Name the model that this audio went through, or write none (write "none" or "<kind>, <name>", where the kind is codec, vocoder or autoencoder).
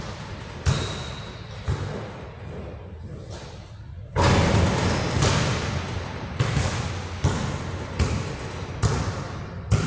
none